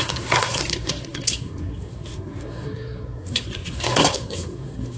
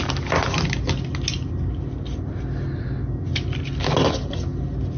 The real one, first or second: second